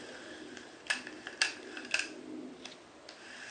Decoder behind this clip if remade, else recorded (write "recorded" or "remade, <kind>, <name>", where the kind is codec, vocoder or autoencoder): recorded